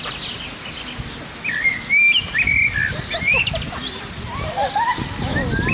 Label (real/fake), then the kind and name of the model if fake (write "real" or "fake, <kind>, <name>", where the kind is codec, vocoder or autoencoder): real